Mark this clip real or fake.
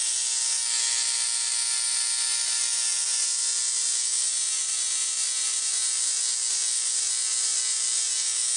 real